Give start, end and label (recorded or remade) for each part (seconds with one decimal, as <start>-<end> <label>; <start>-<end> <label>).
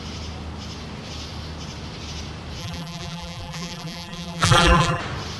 0.0-2.6 recorded; 2.6-5.0 remade; 5.0-5.4 recorded